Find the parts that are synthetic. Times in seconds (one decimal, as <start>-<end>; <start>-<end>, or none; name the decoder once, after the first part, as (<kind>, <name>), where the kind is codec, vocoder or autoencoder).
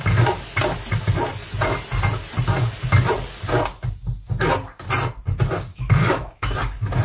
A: 5.7-6.6 (autoencoder, DAC-VAE)